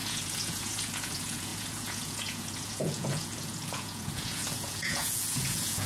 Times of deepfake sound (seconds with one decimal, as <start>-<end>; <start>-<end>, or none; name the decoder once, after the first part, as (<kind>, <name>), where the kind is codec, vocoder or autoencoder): 0.0-5.9 (vocoder, Vocos)